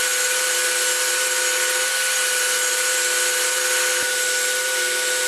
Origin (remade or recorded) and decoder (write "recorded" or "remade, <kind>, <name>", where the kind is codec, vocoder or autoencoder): recorded